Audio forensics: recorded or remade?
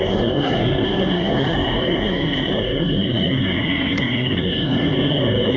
remade